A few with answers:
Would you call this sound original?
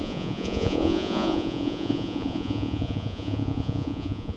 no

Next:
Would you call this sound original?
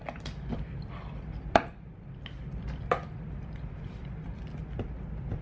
yes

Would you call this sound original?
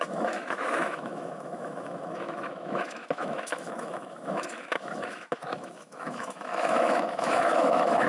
no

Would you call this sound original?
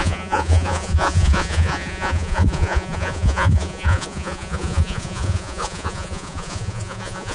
no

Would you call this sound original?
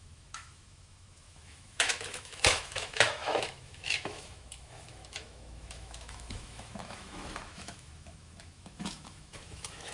no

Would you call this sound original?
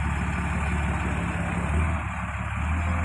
yes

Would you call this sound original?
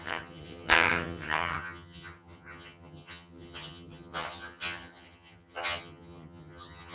no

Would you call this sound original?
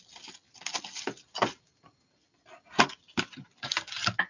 yes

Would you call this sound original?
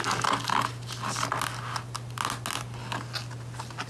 yes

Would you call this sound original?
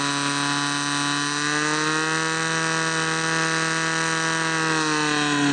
yes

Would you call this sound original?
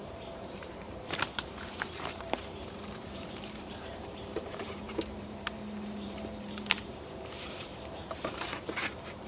no